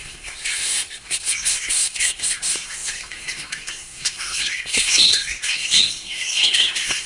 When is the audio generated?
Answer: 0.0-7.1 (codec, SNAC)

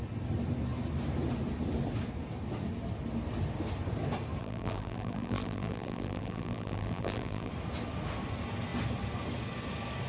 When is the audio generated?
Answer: 4.4-7.5 (vocoder, BigVGAN v2)

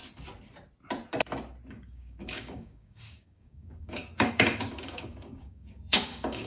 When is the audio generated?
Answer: 1.7-6.5 (codec, DAC)

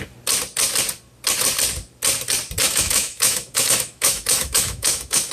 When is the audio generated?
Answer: 2.6-5.3 (autoencoder, DAC-VAE)

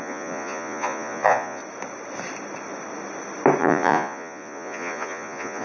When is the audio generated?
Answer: 0.0-1.6 (vocoder, Vocos); 3.6-5.6

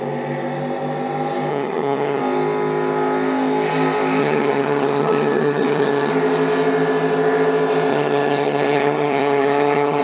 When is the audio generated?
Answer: 1.5-2.2 (vocoder, HiFi-GAN); 4.2-6.1; 7.9-10.0

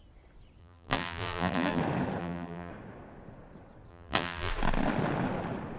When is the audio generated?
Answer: 0.6-1.8 (vocoder, BigVGAN v2); 2.2-2.7; 3.9-4.5

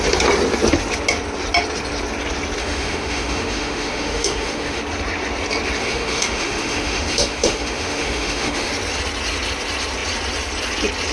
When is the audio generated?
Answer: 2.6-4.8 (autoencoder, DAC-VAE); 5.8-8.7